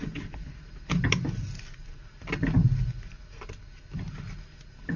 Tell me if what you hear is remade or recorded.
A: recorded